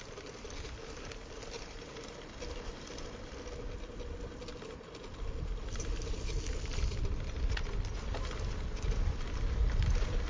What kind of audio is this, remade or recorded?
recorded